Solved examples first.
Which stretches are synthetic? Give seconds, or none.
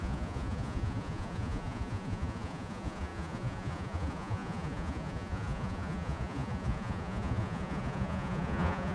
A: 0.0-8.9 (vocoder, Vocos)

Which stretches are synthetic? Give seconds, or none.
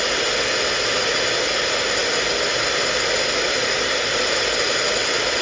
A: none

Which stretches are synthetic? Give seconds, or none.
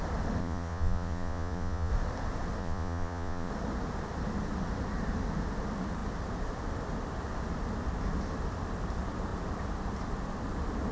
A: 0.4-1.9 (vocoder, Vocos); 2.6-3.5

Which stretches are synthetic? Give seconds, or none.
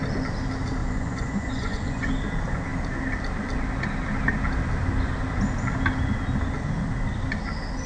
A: 0.8-2.1 (vocoder, Vocos)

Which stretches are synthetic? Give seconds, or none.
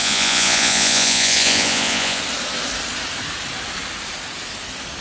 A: 0.0-2.2 (vocoder, Vocos)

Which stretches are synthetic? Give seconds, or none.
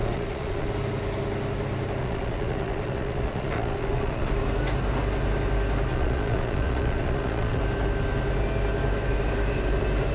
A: 0.0-0.7 (vocoder, Vocos); 2.0-4.3; 5.9-7.6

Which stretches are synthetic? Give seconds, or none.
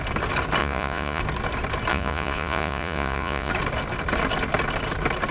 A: 0.6-1.2 (vocoder, Vocos); 1.9-3.5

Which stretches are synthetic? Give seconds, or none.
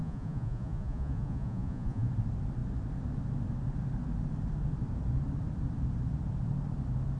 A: 0.0-2.1 (vocoder, Vocos)